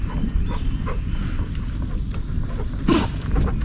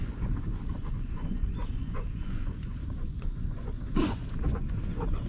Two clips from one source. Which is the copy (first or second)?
second